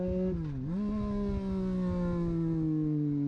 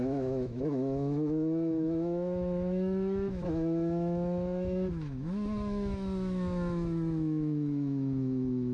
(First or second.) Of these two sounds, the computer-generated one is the second